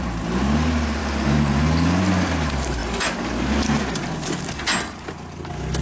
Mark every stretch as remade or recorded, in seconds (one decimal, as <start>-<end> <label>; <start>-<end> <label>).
0.0-1.0 recorded; 1.0-2.0 remade; 2.0-5.8 recorded